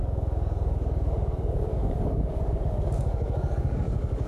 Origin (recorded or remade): remade